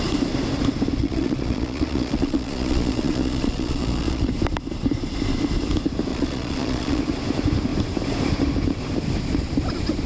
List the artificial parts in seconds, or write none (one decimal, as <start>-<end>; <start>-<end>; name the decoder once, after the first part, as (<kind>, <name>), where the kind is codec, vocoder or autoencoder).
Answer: 1.0-4.3 (vocoder, Vocos); 6.1-7.0